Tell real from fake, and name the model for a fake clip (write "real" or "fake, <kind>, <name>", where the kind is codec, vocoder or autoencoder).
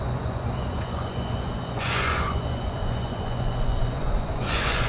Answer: fake, vocoder, Vocos